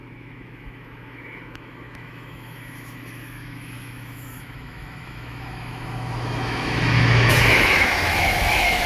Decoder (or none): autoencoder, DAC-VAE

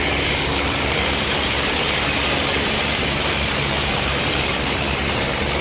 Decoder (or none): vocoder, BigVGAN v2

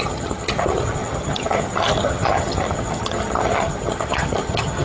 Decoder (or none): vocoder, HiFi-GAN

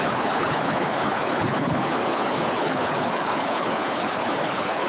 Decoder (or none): codec, HILCodec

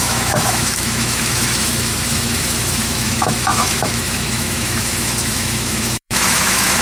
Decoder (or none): autoencoder, DAC-VAE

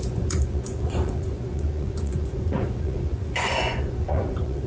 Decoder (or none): vocoder, Vocos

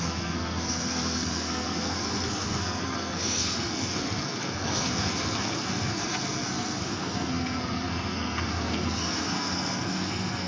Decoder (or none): codec, SNAC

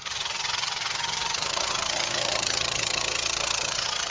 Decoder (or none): vocoder, HiFi-GAN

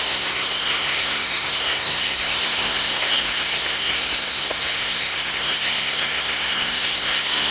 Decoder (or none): codec, SNAC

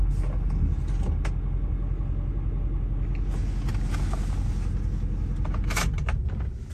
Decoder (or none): none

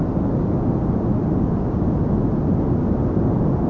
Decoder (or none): none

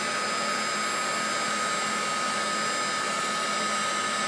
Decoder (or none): none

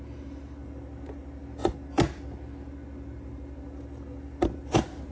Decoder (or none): none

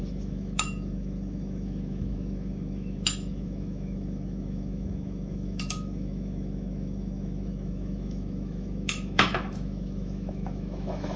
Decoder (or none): autoencoder, DAC-VAE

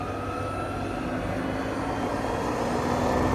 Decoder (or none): none